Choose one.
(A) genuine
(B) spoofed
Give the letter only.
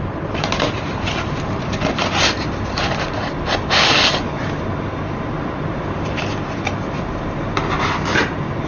A